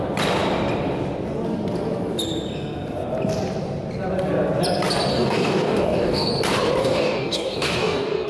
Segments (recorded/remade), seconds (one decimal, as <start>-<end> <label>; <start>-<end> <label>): 0.0-5.1 recorded; 5.1-6.3 remade; 6.3-6.8 recorded; 6.8-8.3 remade